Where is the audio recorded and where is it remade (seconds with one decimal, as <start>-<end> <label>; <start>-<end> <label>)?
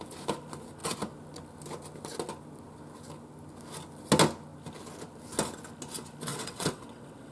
0.0-6.3 recorded; 6.3-7.3 remade